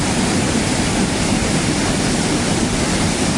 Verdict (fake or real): real